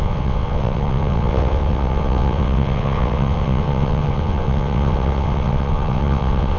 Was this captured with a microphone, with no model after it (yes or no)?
no